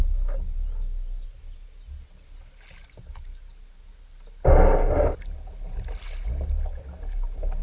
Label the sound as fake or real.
real